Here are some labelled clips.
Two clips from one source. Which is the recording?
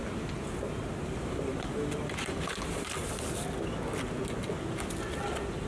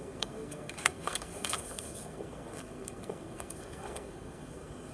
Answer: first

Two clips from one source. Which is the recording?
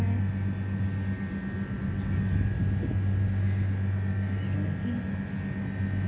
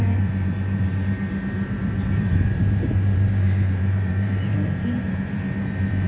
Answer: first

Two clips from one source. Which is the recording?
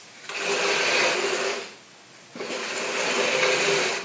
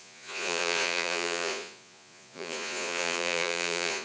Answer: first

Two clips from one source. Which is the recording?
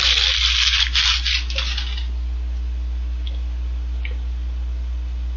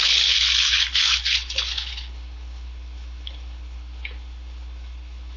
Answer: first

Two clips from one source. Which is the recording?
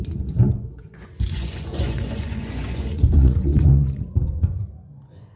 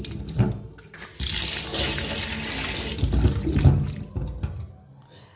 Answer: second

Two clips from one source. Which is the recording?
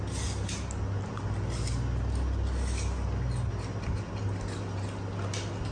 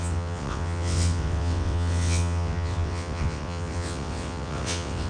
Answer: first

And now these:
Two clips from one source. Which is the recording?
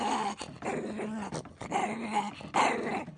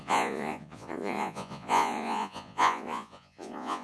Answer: first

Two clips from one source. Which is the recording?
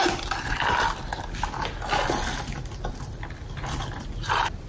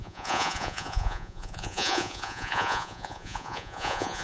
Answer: first